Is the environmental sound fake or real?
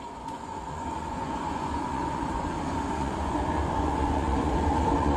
fake